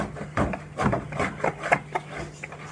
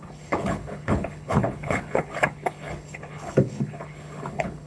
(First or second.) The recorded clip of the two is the first